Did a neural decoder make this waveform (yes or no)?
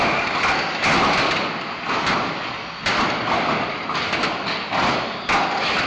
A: no